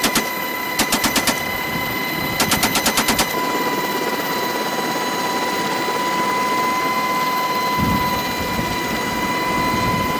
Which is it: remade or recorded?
recorded